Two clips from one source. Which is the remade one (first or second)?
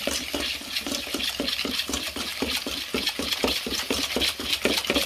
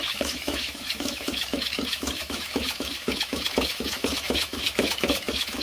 second